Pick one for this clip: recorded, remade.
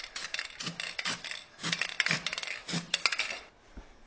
recorded